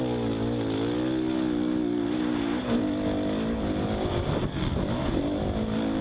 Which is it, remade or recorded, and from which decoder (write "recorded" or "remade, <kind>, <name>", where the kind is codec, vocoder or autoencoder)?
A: recorded